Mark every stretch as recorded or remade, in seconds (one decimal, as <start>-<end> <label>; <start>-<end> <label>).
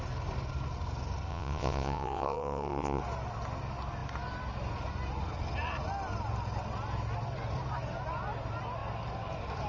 0.0-1.3 recorded; 1.3-3.0 remade; 3.0-9.7 recorded